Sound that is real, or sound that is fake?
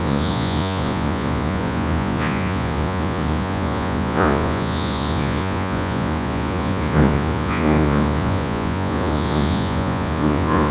fake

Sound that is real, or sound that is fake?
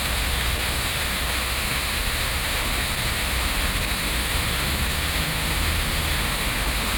fake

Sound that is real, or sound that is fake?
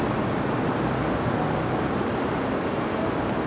real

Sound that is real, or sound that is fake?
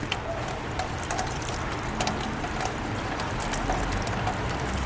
real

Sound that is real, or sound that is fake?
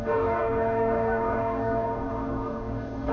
fake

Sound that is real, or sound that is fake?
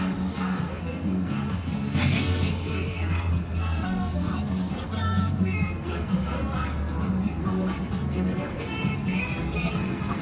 fake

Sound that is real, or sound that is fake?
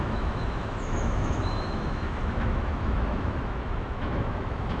fake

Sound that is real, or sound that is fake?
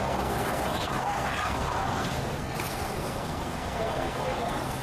fake